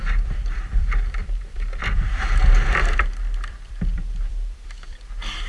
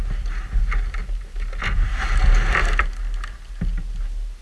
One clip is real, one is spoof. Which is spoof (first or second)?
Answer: first